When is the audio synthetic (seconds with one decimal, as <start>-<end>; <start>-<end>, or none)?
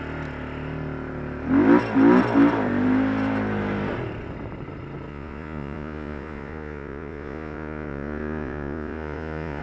5.1-9.6